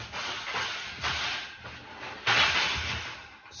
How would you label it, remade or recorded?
recorded